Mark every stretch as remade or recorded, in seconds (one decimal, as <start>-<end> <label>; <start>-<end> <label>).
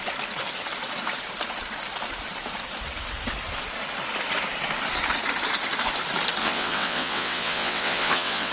0.0-6.4 recorded; 6.4-8.5 remade